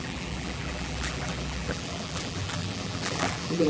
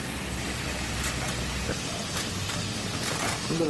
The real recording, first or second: second